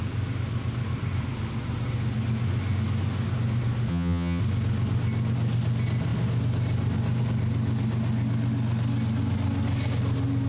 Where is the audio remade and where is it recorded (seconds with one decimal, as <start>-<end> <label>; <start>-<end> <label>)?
0.0-3.9 recorded; 3.9-4.4 remade; 4.4-10.5 recorded

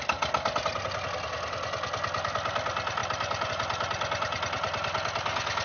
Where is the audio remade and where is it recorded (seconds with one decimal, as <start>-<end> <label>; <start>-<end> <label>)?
0.0-5.6 recorded